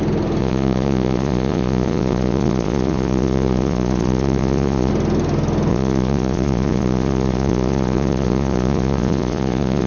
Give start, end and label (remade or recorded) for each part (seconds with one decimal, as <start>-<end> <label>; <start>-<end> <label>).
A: 0.0-0.4 recorded; 0.4-4.9 remade; 4.9-5.7 recorded; 5.7-9.9 remade

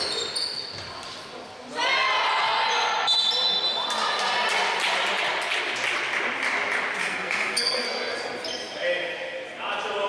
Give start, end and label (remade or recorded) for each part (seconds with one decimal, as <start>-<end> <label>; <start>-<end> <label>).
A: 0.0-7.0 recorded; 7.0-8.2 remade; 8.2-10.1 recorded